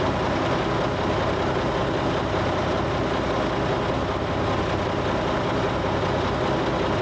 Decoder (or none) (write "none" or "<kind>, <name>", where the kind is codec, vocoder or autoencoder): none